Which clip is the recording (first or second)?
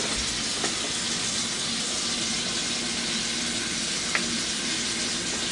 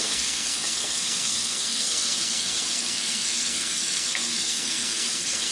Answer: first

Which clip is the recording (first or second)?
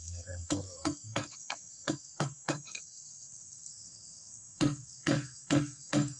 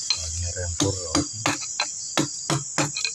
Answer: second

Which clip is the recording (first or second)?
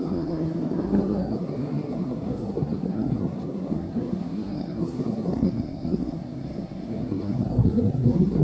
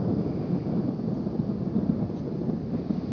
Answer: second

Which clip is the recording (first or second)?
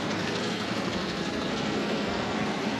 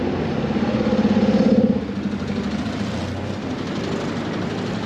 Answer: second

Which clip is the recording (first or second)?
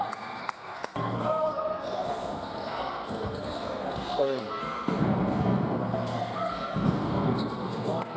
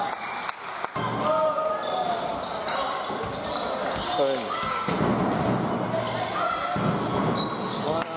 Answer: second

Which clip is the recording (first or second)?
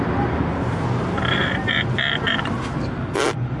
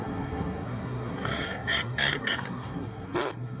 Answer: first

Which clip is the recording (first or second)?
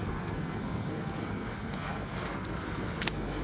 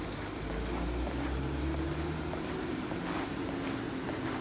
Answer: second